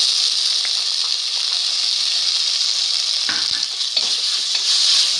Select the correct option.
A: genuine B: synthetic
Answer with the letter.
A